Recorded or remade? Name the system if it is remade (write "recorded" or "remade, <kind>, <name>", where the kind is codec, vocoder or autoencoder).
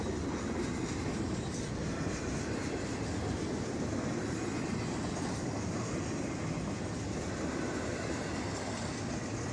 recorded